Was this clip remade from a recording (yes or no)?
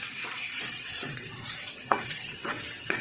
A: yes